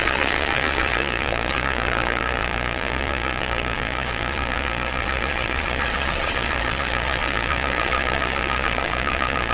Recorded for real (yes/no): no